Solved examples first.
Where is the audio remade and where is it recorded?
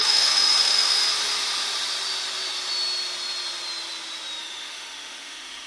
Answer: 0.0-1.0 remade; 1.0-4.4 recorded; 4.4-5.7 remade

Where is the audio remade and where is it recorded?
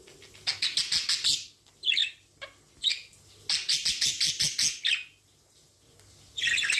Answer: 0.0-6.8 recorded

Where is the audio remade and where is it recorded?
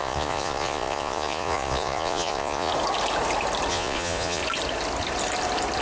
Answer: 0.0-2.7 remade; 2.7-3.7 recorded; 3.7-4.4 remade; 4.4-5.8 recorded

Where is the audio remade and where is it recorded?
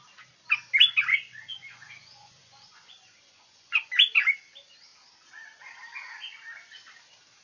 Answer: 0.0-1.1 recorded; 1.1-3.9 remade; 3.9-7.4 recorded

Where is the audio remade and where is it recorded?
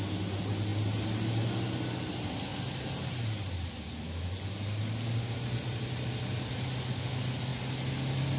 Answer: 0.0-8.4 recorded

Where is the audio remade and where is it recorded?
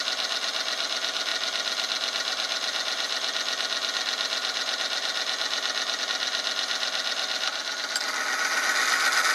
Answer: 0.0-9.3 recorded